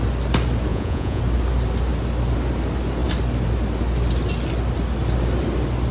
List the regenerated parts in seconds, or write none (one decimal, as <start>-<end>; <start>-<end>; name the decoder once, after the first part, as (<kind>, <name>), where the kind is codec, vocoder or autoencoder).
0.7-1.2 (vocoder, Vocos)